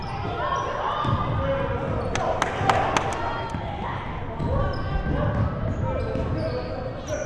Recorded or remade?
recorded